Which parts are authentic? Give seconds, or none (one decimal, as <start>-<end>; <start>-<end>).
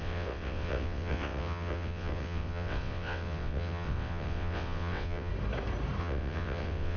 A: 5.3-6.0